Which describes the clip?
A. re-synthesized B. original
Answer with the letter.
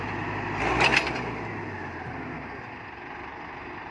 B